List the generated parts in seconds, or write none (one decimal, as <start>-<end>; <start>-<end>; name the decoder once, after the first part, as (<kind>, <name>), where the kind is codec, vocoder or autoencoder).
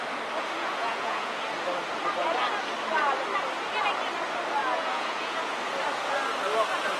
0.6-1.4 (vocoder, Vocos); 4.6-5.6